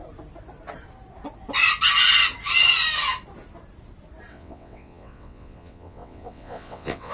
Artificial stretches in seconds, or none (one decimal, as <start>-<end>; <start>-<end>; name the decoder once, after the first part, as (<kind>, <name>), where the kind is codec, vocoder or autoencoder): 4.3-7.1 (vocoder, WaveNeXt)